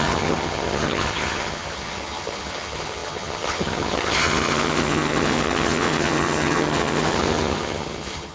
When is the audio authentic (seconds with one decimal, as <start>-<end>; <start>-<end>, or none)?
none

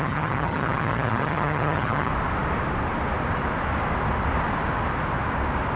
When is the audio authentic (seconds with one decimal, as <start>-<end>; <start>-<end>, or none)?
2.1-5.8